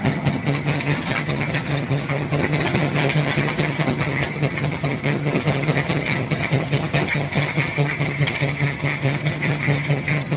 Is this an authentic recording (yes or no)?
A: no